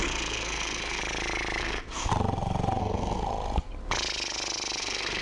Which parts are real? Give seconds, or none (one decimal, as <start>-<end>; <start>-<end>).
1.0-1.6; 2.1-2.8; 3.2-4.8